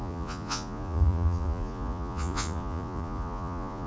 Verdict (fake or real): fake